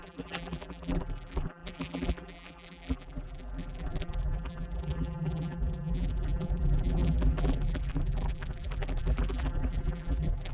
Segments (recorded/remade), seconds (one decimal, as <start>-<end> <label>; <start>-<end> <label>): 0.0-10.5 remade